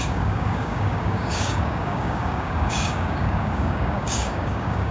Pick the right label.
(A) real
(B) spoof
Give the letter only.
B